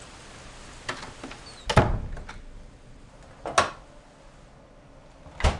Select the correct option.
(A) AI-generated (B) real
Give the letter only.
B